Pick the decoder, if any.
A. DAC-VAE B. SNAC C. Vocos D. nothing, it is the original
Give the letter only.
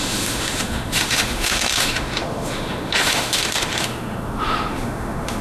A